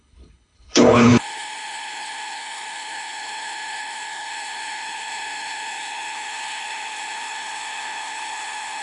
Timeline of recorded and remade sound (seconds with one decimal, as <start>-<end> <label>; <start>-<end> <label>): 0.0-8.8 remade